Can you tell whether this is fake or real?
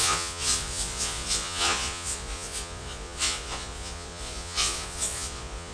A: fake